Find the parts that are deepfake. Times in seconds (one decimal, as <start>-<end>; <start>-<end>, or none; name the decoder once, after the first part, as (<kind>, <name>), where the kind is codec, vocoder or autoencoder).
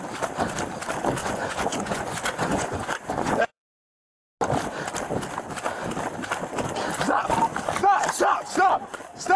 1.2-3.7 (vocoder, Vocos)